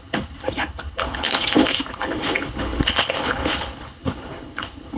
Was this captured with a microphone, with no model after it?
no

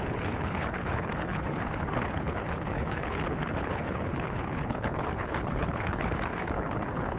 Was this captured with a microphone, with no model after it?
no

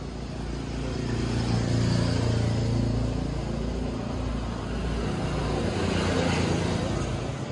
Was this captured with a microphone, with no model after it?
yes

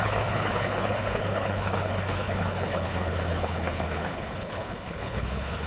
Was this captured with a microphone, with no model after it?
no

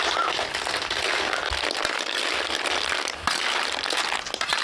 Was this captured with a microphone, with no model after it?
yes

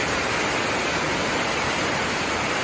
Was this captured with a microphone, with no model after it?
yes